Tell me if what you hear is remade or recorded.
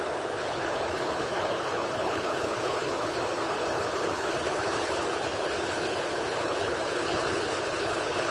remade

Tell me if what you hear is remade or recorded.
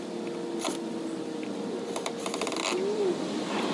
recorded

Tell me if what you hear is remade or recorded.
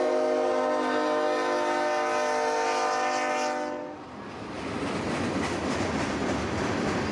recorded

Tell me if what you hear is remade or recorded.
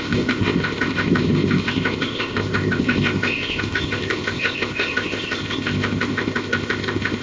remade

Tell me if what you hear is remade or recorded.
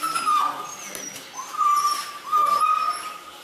recorded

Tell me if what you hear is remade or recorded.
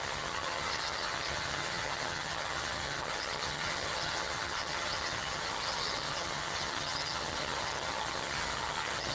remade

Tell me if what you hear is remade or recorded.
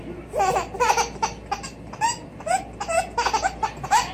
recorded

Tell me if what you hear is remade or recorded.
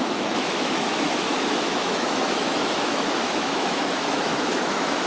remade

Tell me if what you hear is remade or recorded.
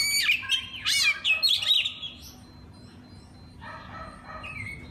recorded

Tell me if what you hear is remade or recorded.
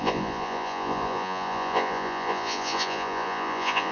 remade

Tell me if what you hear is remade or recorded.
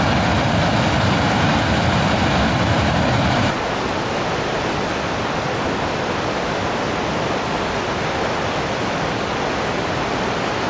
recorded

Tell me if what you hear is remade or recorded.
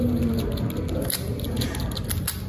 recorded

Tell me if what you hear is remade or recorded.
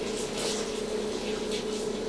recorded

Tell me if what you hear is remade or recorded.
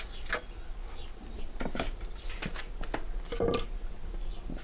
recorded